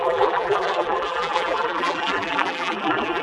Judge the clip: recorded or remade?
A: remade